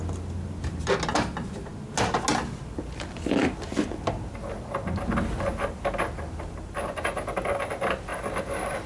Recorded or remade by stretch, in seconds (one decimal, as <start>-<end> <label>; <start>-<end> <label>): 0.0-8.9 recorded